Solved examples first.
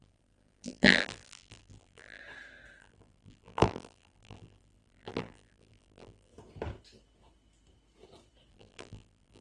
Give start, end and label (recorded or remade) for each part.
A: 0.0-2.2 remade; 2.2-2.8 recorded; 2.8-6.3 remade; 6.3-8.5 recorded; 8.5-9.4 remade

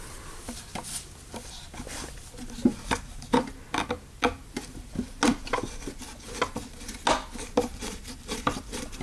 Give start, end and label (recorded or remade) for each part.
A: 0.0-2.7 recorded; 2.7-3.5 remade; 3.5-7.7 recorded; 7.7-9.0 remade

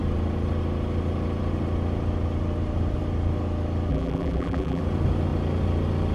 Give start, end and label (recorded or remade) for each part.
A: 0.0-3.9 recorded; 3.9-4.8 remade; 4.8-6.1 recorded

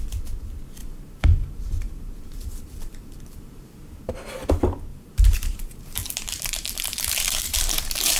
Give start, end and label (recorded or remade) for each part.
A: 0.0-0.8 recorded; 0.8-4.1 remade; 4.1-4.9 recorded; 4.9-8.2 remade

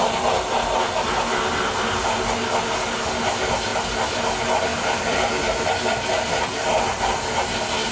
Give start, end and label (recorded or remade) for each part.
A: 0.0-3.7 recorded; 3.7-4.2 remade; 4.2-4.7 recorded; 4.7-6.8 remade; 6.8-7.9 recorded

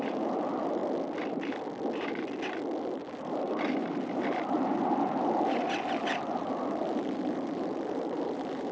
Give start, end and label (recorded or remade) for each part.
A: 0.0-0.8 remade; 0.8-2.8 recorded; 2.8-8.7 remade

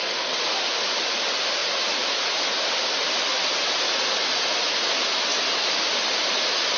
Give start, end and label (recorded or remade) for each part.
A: 0.0-5.3 recorded; 5.3-5.9 remade; 5.9-6.8 recorded